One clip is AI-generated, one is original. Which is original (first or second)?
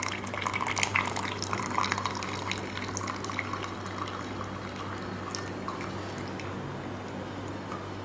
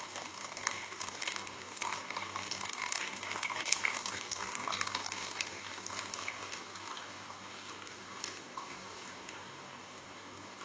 first